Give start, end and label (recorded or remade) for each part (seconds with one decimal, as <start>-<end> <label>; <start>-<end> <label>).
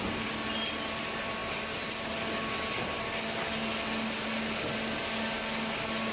0.0-6.1 recorded